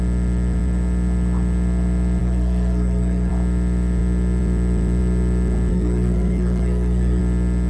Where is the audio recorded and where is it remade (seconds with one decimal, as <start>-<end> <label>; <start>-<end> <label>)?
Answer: 0.0-2.2 recorded; 2.2-3.3 remade; 3.3-5.7 recorded; 5.7-7.2 remade; 7.2-7.7 recorded